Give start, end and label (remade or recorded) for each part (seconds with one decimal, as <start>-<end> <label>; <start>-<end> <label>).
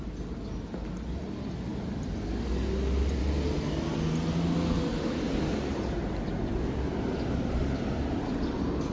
0.0-8.9 recorded